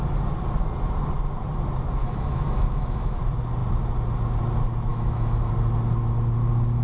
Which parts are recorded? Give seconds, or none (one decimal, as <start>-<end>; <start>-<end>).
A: 0.0-2.0; 3.2-4.9; 5.5-6.8